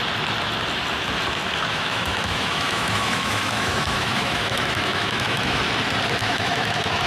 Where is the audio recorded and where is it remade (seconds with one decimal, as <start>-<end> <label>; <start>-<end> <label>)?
0.0-1.7 recorded; 1.7-5.6 remade; 5.6-6.2 recorded; 6.2-7.1 remade